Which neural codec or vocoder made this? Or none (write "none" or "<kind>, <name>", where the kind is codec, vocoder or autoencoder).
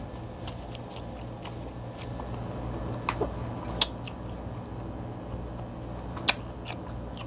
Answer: none